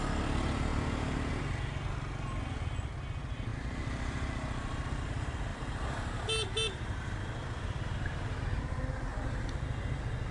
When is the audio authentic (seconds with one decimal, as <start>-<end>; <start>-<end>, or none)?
0.0-0.7; 1.3-5.5; 8.7-9.1; 9.9-10.3